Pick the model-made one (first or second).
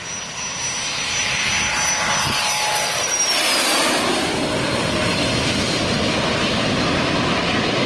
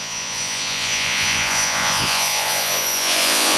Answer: second